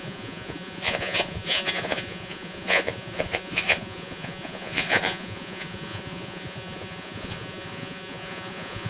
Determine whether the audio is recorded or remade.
remade